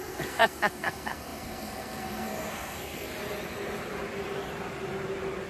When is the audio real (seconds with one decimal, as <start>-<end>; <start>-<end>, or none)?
3.1-5.5